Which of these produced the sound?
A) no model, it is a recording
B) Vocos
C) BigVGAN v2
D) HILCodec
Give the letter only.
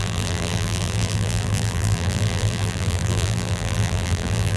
C